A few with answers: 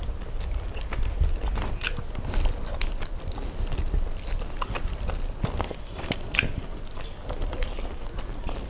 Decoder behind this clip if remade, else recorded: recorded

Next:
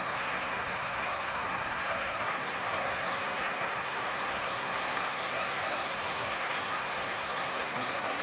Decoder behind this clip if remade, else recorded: remade, codec, SNAC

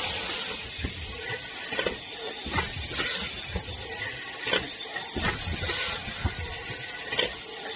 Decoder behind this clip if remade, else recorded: recorded